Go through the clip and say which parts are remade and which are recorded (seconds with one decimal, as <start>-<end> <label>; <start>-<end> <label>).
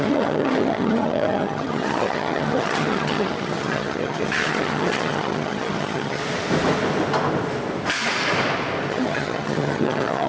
0.0-6.2 remade; 6.2-8.9 recorded; 8.9-10.3 remade